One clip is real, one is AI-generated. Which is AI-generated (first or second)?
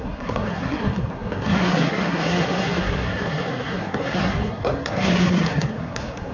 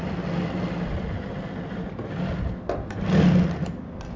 first